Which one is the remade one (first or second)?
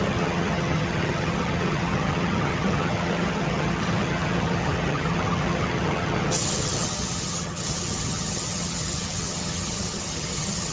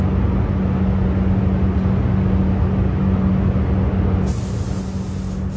first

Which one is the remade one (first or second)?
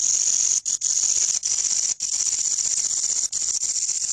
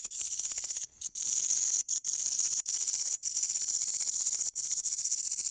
second